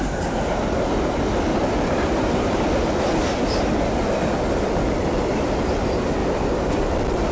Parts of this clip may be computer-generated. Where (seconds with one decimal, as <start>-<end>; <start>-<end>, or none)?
1.5-5.7

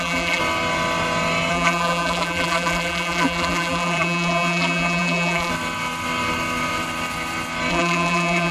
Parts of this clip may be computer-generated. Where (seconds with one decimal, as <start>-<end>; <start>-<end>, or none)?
0.0-0.4; 1.5-5.5; 7.7-8.5

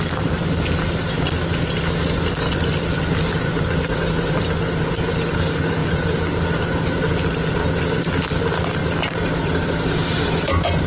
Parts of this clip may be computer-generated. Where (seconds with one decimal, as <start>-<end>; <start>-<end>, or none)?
0.0-10.9

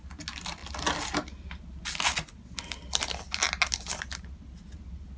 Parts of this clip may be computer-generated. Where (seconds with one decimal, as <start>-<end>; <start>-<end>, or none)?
none